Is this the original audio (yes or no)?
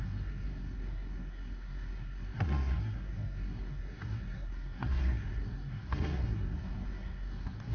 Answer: no